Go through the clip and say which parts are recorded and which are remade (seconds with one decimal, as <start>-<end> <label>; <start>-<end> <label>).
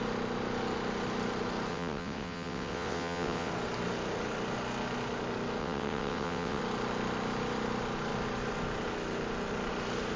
0.0-1.7 recorded; 1.7-3.5 remade; 3.5-5.6 recorded; 5.6-6.6 remade; 6.6-10.2 recorded